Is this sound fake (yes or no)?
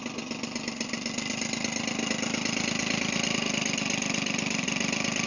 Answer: no